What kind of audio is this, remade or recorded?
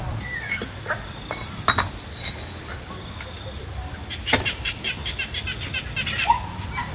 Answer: recorded